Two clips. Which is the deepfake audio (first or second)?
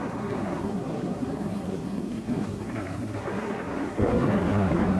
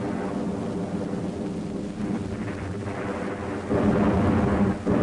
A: first